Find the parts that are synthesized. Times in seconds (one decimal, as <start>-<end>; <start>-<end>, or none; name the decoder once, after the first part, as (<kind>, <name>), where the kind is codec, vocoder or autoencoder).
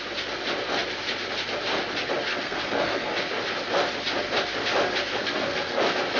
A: 2.3-3.1 (codec, SNAC); 5.2-5.8